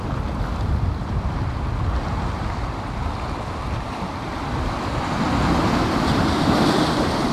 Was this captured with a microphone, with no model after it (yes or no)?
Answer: yes